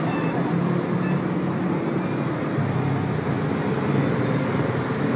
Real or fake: real